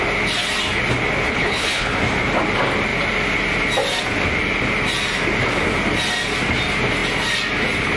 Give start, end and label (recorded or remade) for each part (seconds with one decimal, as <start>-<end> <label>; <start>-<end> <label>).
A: 0.0-1.3 recorded; 1.3-1.9 remade; 1.9-8.0 recorded